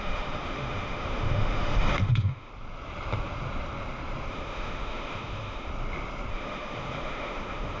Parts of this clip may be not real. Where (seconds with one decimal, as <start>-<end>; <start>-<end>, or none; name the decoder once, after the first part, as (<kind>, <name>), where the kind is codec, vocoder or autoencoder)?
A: 0.0-2.5 (autoencoder, DAC-VAE); 4.3-5.7; 6.3-7.8